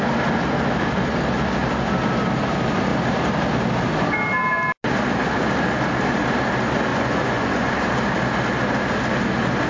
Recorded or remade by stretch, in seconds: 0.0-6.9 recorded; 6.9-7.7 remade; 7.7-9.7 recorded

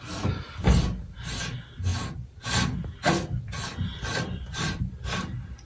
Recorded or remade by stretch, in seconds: 0.0-5.6 recorded

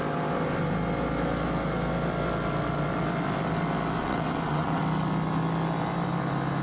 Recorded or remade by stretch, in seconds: 0.0-4.0 recorded; 4.0-4.8 remade; 4.8-6.6 recorded

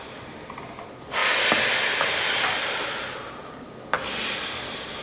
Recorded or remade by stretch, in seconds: 0.0-5.0 recorded